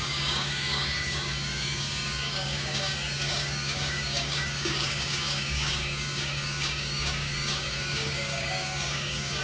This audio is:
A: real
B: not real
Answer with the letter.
B